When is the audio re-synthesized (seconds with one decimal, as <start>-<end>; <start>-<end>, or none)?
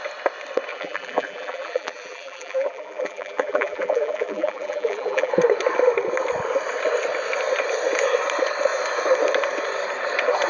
0.7-5.3